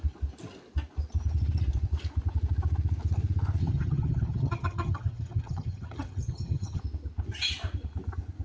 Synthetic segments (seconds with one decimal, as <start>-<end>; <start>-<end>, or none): 3.6-6.8